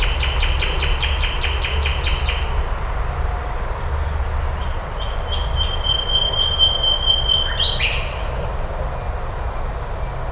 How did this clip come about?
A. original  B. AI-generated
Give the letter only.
A